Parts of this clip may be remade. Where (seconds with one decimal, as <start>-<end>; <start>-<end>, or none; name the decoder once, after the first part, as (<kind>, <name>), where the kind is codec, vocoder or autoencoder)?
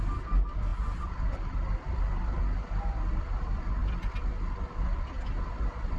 none